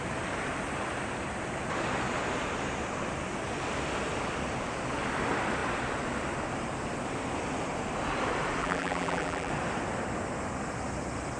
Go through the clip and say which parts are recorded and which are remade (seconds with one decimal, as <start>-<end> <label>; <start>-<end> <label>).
0.0-8.6 recorded; 8.6-9.5 remade; 9.5-11.4 recorded